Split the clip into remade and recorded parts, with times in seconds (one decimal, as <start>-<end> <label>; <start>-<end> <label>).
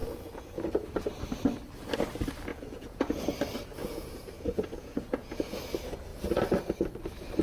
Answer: 0.0-0.6 remade; 0.6-2.5 recorded; 2.5-3.2 remade; 3.2-3.8 recorded; 3.8-5.6 remade; 5.6-7.4 recorded